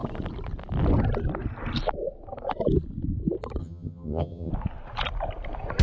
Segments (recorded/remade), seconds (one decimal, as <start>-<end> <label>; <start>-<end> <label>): 0.0-3.6 recorded; 3.6-4.5 remade; 4.5-5.8 recorded